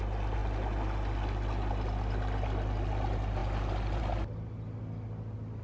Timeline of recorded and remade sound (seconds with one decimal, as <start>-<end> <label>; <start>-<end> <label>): 0.0-5.6 recorded